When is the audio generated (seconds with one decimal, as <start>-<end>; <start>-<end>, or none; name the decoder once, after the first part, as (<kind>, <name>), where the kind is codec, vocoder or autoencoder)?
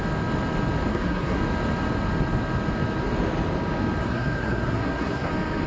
0.9-1.4 (codec, SNAC); 4.0-5.3